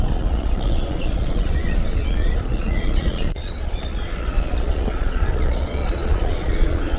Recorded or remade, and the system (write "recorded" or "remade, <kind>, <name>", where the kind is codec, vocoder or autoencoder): remade, vocoder, Vocos